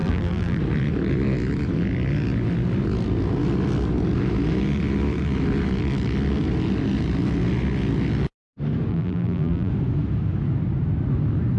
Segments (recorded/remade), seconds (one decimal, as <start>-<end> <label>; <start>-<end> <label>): 0.0-0.6 remade; 0.6-8.9 recorded; 8.9-9.7 remade; 9.7-11.6 recorded